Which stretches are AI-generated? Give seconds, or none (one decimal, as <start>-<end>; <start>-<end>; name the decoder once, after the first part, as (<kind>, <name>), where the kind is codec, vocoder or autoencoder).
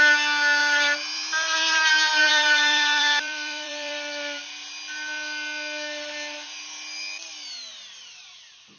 0.6-4.7 (vocoder, BigVGAN v2)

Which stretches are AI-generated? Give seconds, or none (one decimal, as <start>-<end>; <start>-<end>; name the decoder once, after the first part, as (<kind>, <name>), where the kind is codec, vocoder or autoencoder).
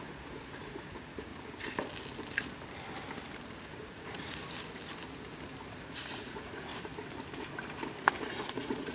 0.0-1.3 (vocoder, Vocos); 3.6-4.4; 5.8-6.7; 8.2-8.9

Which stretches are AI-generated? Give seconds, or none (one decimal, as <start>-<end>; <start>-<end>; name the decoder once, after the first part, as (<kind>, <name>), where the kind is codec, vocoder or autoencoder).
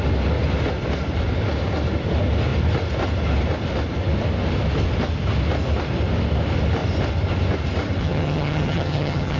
8.0-9.4 (vocoder, HiFi-GAN)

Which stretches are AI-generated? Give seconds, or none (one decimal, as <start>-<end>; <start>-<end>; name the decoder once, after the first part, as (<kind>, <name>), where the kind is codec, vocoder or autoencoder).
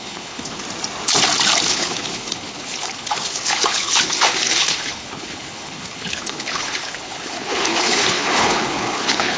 0.0-0.6 (codec, HILCodec); 1.7-9.4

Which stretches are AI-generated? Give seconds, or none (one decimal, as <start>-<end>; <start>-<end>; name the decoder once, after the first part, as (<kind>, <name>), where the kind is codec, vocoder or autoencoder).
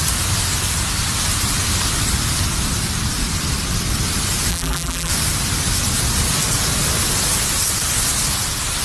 4.5-5.1 (vocoder, BigVGAN v2)